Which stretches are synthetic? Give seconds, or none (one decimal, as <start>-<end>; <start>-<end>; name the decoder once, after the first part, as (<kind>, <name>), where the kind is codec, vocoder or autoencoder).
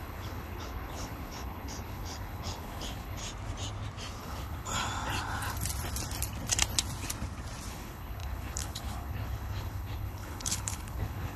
0.0-3.2 (codec, HILCodec); 4.2-4.7; 7.7-11.4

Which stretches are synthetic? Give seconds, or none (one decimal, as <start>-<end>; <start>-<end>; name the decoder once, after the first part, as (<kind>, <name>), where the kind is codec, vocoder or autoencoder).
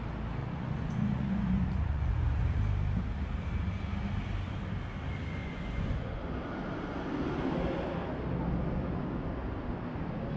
0.4-2.6 (vocoder, Vocos); 5.4-6.2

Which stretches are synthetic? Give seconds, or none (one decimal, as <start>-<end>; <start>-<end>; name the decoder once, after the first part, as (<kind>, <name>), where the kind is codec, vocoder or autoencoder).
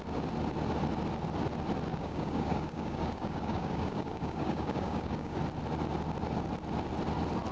1.9-5.4 (codec, DAC)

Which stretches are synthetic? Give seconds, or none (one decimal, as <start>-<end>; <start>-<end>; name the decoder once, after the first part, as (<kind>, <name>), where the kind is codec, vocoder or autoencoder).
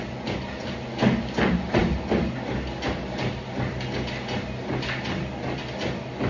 none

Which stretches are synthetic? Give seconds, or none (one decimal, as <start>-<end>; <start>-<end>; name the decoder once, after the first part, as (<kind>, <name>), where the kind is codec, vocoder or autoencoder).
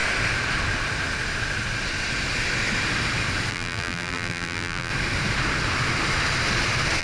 3.5-4.9 (vocoder, BigVGAN v2)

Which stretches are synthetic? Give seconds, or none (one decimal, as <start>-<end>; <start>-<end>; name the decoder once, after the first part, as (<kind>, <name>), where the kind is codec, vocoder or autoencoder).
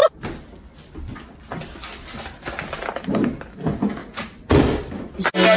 4.0-4.6 (vocoder, Vocos)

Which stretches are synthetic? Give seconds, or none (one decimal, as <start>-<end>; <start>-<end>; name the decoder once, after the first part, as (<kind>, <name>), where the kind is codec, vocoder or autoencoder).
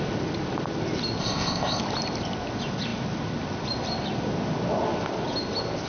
1.2-1.8 (codec, ZipCodec)